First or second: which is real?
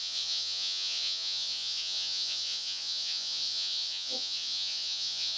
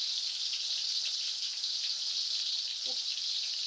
second